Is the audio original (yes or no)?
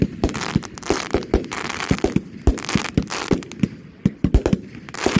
no